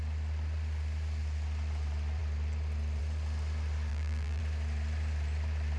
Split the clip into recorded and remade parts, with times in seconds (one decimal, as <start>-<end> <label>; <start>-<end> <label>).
0.0-3.9 recorded; 3.9-4.4 remade; 4.4-5.8 recorded